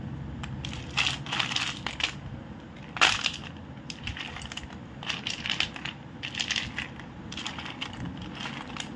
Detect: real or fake real